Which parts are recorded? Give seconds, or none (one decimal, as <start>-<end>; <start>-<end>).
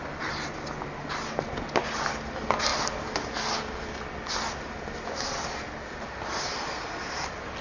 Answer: 0.0-7.6